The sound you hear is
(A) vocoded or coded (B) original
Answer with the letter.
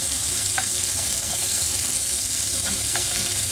A